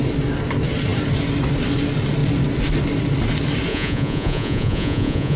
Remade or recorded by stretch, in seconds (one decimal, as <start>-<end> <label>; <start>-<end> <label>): 0.0-3.7 recorded; 3.7-5.4 remade